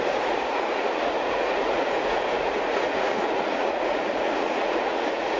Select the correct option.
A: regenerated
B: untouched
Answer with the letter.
A